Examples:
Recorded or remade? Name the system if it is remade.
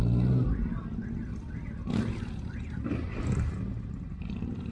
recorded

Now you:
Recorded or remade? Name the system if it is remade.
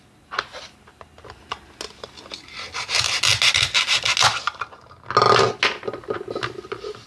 recorded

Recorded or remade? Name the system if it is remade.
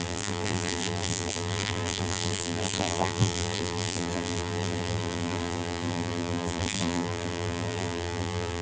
remade, vocoder, BigVGAN v2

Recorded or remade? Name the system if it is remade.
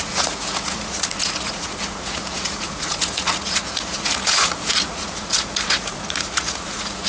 remade, vocoder, Vocos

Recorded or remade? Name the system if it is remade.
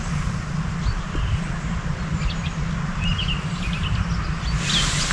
recorded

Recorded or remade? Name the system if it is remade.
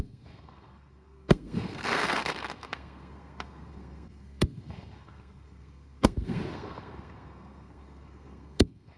remade, codec, SNAC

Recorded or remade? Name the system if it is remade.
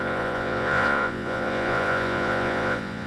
remade, vocoder, Vocos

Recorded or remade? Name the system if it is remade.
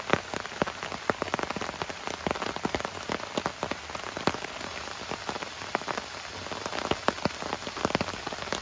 recorded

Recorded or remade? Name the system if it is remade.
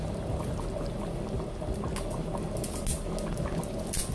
recorded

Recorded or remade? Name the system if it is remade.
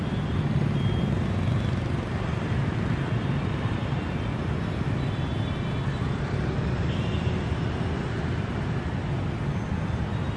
recorded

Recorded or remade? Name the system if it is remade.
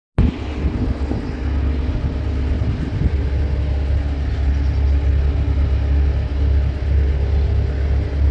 recorded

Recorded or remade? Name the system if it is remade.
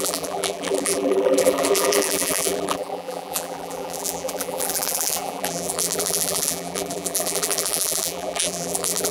remade, vocoder, BigVGAN v2